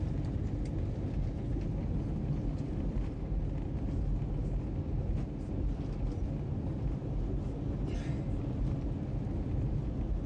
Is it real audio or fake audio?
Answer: real